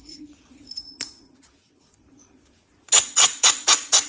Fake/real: fake